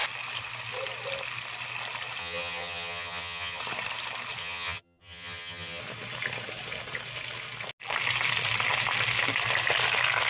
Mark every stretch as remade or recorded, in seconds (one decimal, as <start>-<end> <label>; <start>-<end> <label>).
0.0-2.2 recorded; 2.2-3.6 remade; 3.6-4.4 recorded; 4.4-5.8 remade; 5.8-10.3 recorded